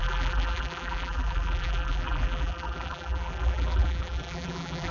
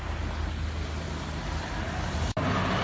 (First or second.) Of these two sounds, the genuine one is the second